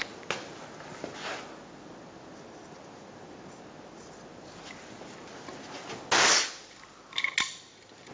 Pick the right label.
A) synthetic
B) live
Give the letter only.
B